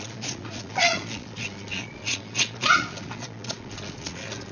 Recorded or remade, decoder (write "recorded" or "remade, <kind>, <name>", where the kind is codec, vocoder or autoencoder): remade, vocoder, Vocos